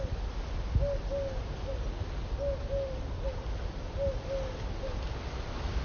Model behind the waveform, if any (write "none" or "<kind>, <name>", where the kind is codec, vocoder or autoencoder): none